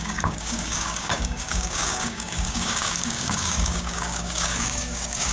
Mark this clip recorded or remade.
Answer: remade